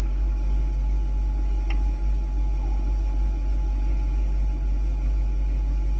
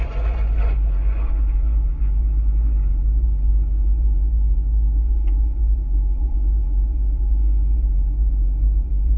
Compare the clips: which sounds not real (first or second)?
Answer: second